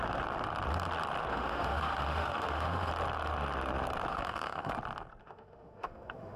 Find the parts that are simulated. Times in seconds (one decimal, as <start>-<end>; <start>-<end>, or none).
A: 1.3-2.9; 4.1-4.7; 5.2-6.4